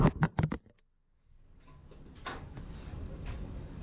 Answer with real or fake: fake